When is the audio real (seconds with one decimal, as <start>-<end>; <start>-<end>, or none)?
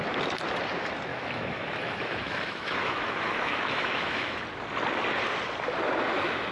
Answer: 0.0-1.1; 4.4-6.5